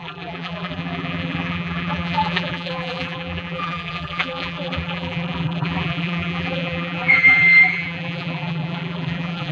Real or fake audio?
fake